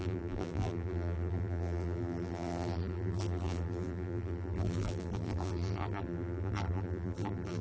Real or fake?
fake